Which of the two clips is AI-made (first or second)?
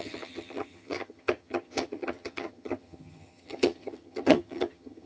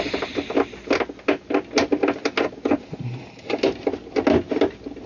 first